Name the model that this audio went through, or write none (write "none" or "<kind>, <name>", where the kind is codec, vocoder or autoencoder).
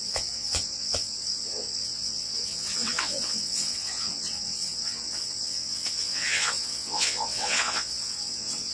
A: vocoder, WaveNeXt